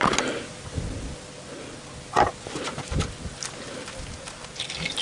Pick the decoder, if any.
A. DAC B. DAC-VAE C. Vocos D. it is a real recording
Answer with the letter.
D